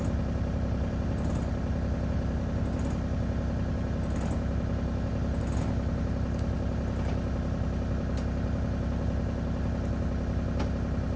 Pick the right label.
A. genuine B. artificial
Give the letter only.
A